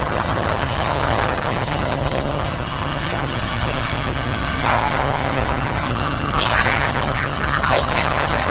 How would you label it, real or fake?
fake